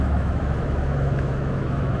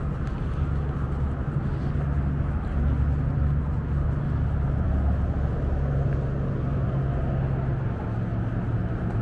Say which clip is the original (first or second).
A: second